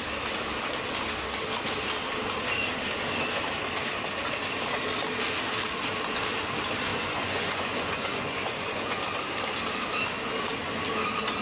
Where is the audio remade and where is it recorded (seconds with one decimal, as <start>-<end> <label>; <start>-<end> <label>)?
0.0-6.9 recorded; 6.9-9.0 remade; 9.0-11.4 recorded